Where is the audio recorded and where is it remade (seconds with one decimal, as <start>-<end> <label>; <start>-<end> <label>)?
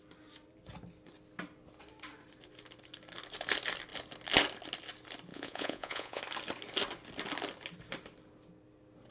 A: 0.0-5.3 recorded; 5.3-6.2 remade; 6.2-9.1 recorded